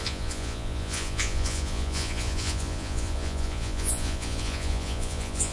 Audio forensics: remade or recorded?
remade